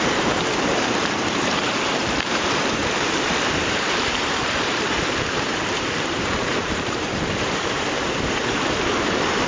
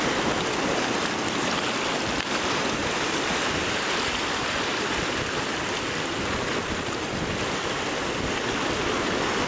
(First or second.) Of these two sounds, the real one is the second